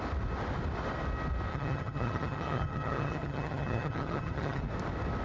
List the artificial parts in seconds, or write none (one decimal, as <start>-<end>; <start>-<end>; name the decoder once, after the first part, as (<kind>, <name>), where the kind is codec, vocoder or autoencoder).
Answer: 1.5-4.6 (vocoder, HiFi-GAN)